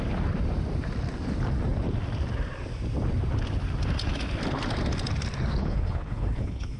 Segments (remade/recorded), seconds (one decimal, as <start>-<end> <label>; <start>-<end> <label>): 0.0-5.6 recorded; 5.6-6.8 remade